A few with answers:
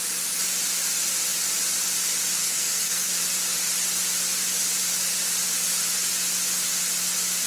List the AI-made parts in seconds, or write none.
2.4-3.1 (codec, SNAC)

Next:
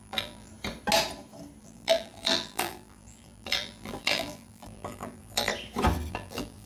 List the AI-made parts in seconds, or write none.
0.0-0.5 (vocoder, BigVGAN v2); 1.6-5.5; 6.1-6.7

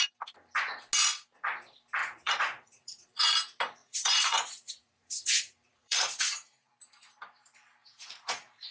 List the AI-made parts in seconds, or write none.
2.0-3.2 (vocoder, Vocos); 3.8-6.7; 7.8-8.7

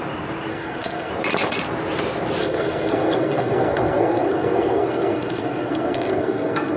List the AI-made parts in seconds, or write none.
0.5-1.1 (codec, SNAC); 2.4-6.8

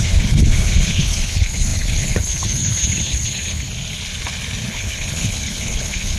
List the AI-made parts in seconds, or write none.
0.0-3.7 (codec, HILCodec); 4.7-6.2

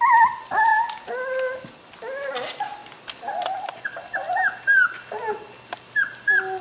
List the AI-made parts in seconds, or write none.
2.8-4.0 (vocoder, BigVGAN v2)

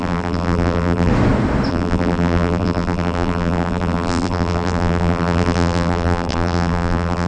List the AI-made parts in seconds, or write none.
0.0-1.1 (vocoder, BigVGAN v2); 1.7-7.3

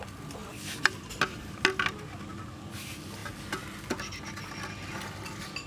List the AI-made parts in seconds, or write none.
none